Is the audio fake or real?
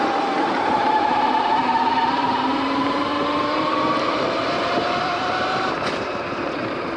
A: fake